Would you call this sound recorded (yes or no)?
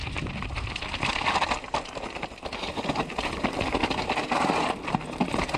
yes